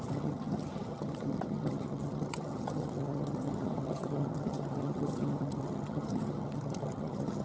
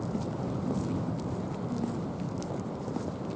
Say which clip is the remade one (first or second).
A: first